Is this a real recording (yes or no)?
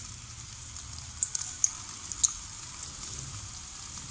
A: yes